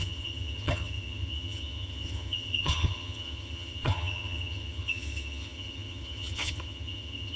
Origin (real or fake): fake